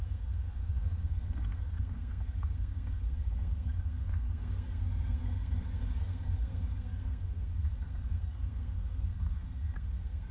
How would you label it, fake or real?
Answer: fake